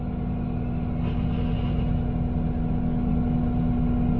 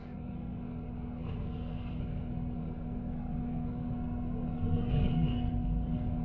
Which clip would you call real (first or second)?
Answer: first